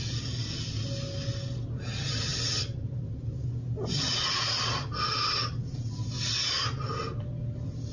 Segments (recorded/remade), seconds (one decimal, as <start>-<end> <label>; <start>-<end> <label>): 0.0-2.3 recorded; 2.3-3.0 remade; 3.0-7.9 recorded

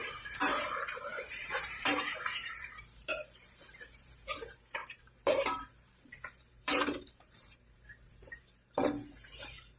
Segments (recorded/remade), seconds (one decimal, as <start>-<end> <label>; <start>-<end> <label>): 0.0-9.8 remade